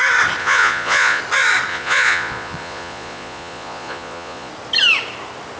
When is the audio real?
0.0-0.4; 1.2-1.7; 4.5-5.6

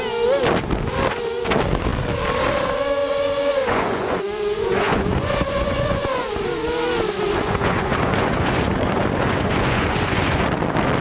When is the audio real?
0.0-3.0; 6.3-7.4; 10.5-11.0

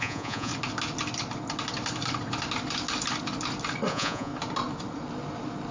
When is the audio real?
0.5-3.9; 4.3-5.7

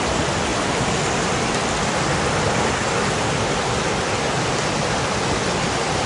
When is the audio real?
0.0-6.1